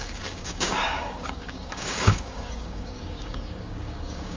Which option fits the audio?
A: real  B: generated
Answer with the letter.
B